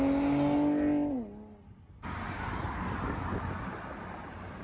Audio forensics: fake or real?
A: real